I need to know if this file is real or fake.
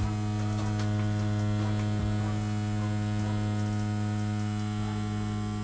real